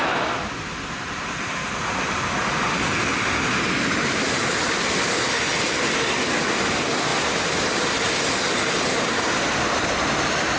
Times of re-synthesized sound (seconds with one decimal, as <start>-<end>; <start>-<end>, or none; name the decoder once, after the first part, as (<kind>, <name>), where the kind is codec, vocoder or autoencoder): none

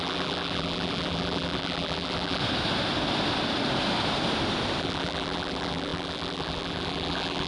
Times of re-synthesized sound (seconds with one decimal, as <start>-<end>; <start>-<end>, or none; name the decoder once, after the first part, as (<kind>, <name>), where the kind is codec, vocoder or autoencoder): 0.0-2.4 (vocoder, BigVGAN v2); 4.8-7.5

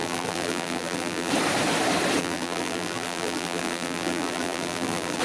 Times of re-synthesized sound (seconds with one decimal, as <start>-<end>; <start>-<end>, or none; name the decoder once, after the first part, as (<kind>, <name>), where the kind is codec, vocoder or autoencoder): 0.0-1.3 (vocoder, BigVGAN v2); 2.2-5.2

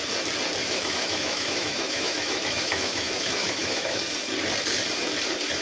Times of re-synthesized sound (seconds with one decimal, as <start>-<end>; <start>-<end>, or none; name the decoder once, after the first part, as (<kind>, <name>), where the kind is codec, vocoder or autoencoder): 0.6-4.0 (autoencoder, DAC-VAE)

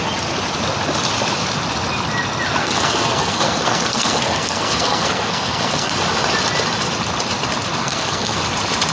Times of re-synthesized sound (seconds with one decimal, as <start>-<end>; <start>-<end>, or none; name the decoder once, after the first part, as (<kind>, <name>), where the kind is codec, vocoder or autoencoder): 2.6-5.9 (codec, SNAC); 7.8-8.4

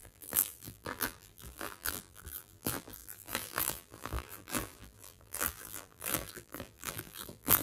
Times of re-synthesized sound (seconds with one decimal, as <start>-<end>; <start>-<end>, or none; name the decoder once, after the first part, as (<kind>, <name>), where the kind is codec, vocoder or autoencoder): 0.0-7.6 (vocoder, BigVGAN v2)

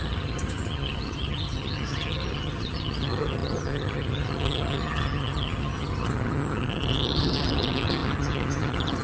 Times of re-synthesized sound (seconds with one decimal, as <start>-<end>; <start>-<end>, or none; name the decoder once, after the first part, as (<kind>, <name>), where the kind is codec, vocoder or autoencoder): 0.0-9.0 (vocoder, HiFi-GAN)

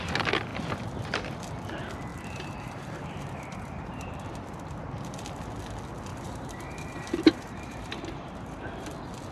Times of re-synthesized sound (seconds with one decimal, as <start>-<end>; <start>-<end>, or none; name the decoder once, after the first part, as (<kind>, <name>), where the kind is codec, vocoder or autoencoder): 2.1-4.2 (vocoder, BigVGAN v2); 6.1-8.9